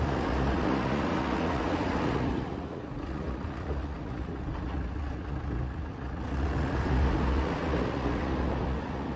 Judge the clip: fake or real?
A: fake